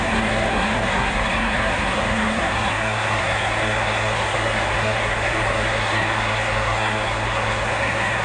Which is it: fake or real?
fake